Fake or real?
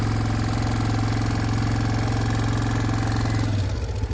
real